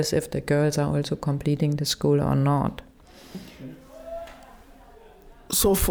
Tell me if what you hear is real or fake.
fake